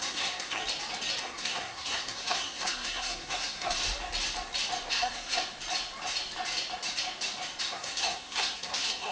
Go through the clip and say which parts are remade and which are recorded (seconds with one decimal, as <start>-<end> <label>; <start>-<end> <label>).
0.0-0.6 remade; 0.6-1.2 recorded; 1.2-3.8 remade; 3.8-4.9 recorded; 4.9-5.4 remade; 5.4-7.6 recorded; 7.6-9.1 remade